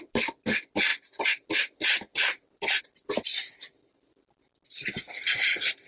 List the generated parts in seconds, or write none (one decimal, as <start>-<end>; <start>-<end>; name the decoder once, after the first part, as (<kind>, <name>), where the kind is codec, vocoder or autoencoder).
none